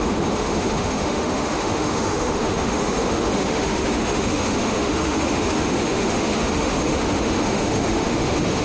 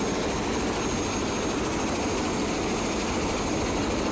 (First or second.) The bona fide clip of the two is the second